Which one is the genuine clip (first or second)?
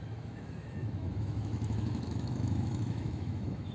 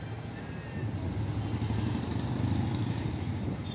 second